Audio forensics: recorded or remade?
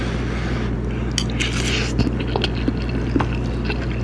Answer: recorded